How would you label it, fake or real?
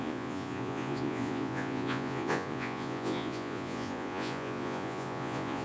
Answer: fake